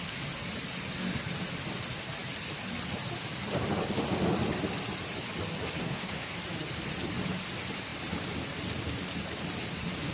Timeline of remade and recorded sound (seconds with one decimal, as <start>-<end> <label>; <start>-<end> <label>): 0.0-5.8 recorded; 5.8-6.3 remade; 6.3-10.1 recorded